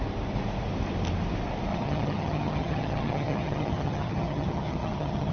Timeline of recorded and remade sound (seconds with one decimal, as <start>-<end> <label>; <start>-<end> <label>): 0.0-1.7 recorded; 1.7-5.3 remade